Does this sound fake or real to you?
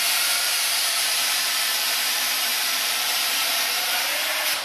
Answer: fake